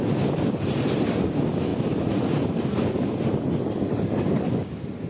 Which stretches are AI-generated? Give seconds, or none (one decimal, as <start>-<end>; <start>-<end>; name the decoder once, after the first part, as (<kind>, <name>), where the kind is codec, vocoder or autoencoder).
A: none

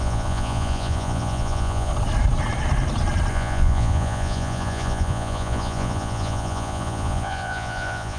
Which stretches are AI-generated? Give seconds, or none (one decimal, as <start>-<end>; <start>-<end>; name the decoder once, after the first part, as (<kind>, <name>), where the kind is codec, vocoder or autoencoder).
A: 0.0-1.9 (vocoder, Vocos); 3.3-8.2

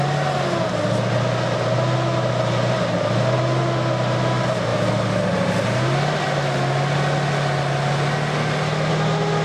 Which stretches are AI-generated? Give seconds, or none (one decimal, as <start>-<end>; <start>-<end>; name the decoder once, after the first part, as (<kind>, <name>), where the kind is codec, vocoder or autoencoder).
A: none

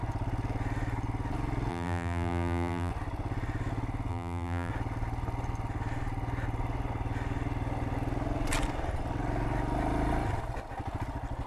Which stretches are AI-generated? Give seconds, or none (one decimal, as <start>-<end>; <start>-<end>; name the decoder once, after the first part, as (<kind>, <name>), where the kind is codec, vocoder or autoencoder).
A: 1.7-2.9 (vocoder, BigVGAN v2); 4.1-4.7